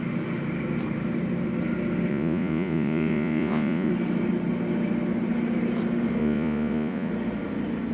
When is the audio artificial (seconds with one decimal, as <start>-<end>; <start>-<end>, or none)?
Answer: 2.1-3.9; 6.2-7.1